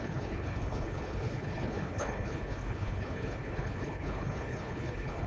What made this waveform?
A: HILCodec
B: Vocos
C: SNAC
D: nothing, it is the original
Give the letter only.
A